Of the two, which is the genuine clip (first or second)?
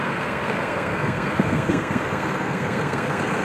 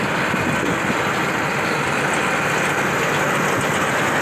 second